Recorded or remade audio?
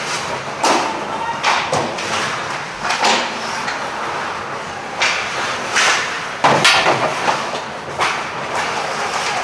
recorded